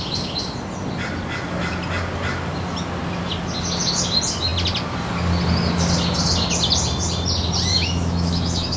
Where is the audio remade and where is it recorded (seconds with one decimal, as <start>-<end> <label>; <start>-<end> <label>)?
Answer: 0.0-7.7 recorded; 7.7-8.8 remade